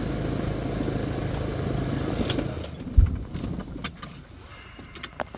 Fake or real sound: real